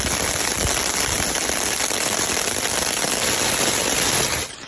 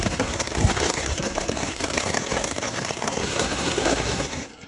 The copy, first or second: second